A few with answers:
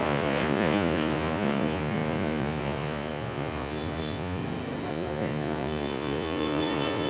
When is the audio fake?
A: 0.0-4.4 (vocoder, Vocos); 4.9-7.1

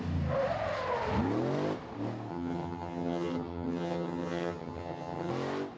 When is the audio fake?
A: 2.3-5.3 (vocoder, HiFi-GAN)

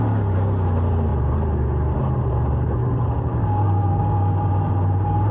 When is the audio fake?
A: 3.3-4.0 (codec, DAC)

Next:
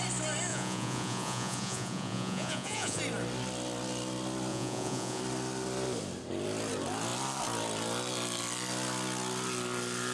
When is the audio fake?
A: 0.5-3.0 (vocoder, Vocos); 4.5-5.2

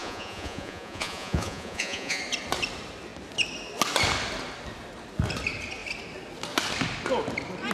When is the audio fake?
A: 0.0-2.2 (vocoder, Vocos)